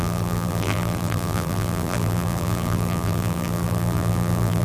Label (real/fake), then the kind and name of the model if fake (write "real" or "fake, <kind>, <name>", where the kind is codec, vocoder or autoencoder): fake, vocoder, BigVGAN v2